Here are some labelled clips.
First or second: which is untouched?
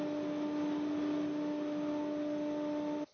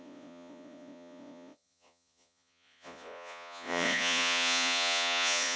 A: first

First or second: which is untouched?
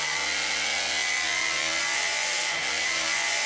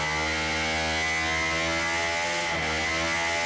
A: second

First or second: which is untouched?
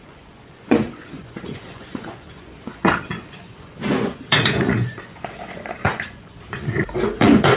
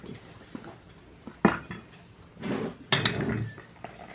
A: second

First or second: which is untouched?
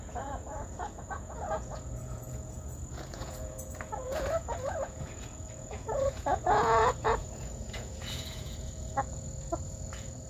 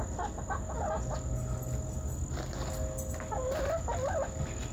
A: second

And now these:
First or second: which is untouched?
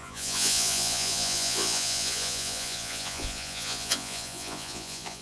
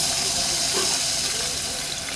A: second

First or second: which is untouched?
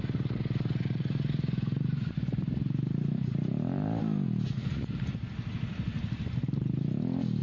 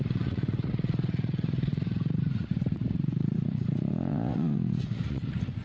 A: first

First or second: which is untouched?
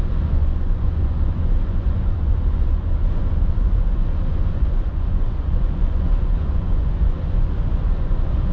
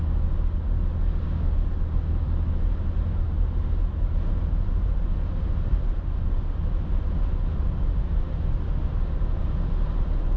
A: second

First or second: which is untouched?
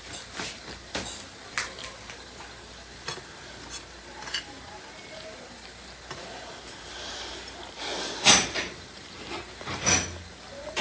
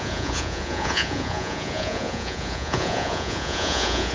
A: first